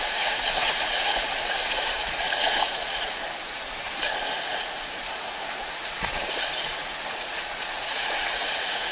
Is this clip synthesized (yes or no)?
yes